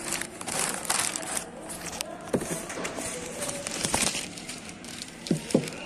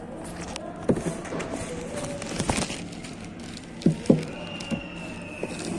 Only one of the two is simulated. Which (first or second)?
first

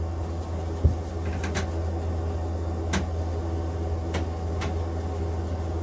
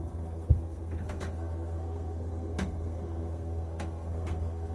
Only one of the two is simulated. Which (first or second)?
second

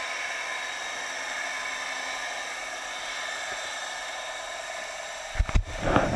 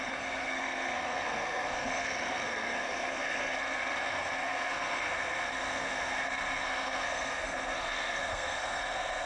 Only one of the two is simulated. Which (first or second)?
second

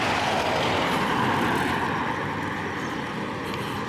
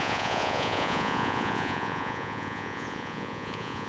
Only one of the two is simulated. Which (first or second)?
second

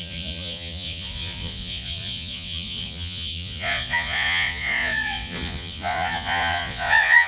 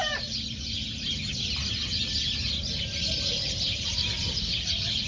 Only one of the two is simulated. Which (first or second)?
first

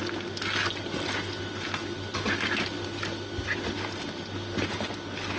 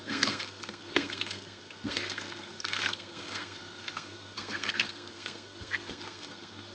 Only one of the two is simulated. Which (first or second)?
second